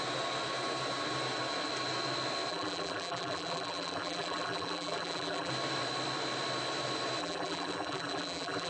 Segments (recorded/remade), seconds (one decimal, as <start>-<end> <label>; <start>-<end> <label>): 0.0-2.5 recorded; 2.5-5.5 remade; 5.5-7.2 recorded; 7.2-8.7 remade